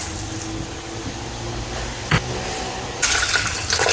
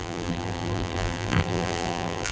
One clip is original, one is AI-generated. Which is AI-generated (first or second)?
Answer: second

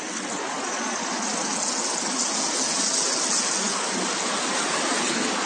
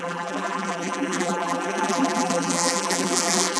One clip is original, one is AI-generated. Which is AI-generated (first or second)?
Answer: second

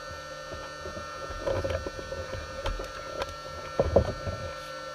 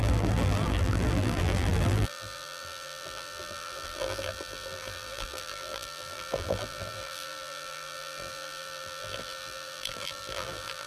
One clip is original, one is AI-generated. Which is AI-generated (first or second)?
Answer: second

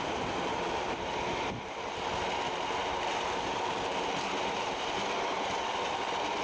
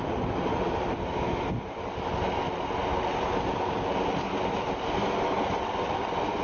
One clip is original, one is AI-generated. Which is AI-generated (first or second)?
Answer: first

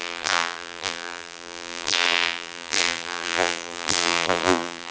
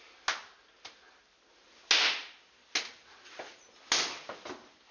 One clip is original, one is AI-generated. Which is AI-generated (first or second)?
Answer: first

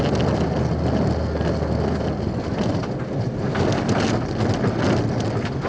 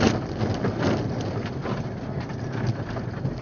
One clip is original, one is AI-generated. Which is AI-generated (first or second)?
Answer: second